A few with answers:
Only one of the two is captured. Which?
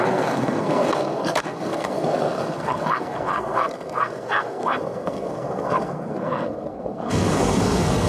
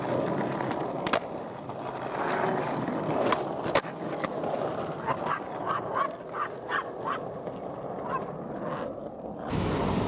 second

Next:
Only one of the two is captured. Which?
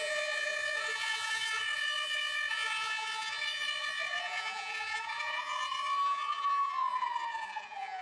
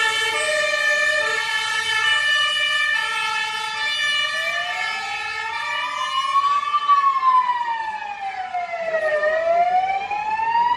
second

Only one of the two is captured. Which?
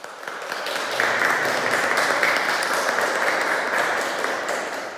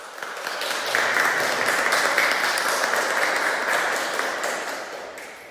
second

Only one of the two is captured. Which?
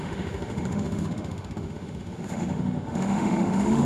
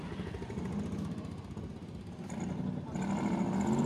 second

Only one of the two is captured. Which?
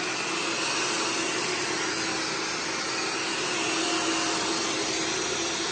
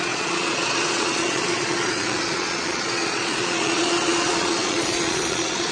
first